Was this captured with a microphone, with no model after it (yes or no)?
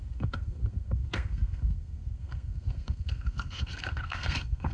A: no